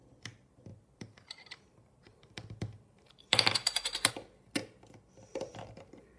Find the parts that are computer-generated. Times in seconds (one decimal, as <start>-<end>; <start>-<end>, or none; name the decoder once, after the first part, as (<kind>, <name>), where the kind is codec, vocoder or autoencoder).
0.7-4.1 (vocoder, BigVGAN v2); 5.5-6.2